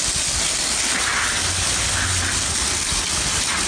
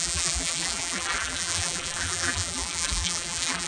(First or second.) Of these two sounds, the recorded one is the first